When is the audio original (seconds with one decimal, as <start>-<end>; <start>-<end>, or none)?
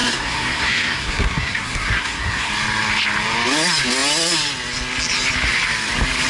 2.5-6.3